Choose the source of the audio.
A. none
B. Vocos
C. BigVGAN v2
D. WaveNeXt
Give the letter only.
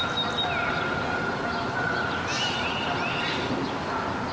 A